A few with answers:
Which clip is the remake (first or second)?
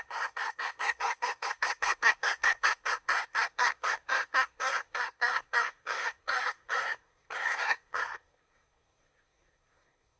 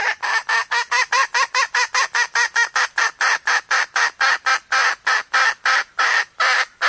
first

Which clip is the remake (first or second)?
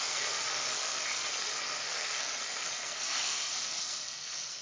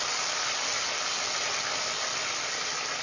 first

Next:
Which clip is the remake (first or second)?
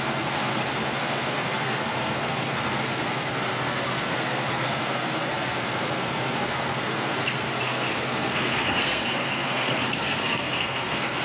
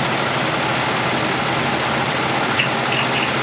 first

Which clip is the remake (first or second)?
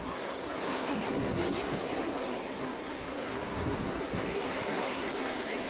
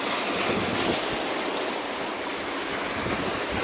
first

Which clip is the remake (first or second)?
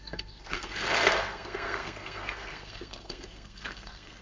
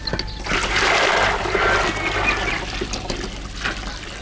first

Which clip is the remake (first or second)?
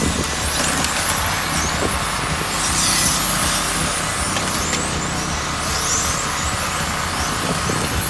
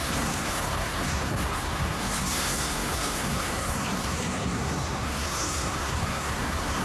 second